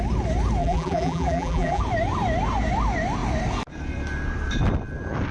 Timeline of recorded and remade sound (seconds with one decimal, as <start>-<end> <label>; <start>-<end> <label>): 0.0-0.6 recorded; 0.6-1.8 remade; 1.8-5.3 recorded